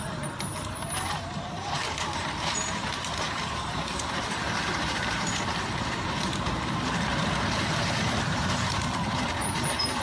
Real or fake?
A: fake